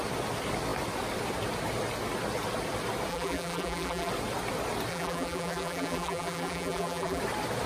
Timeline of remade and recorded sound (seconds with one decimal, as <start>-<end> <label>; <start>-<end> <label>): 0.0-3.1 recorded; 3.1-4.1 remade; 4.1-4.9 recorded; 4.9-7.2 remade; 7.2-7.7 recorded